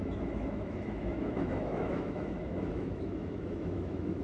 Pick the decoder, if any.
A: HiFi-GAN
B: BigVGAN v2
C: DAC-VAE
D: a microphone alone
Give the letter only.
C